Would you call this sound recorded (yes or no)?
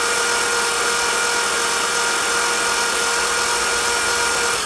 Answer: yes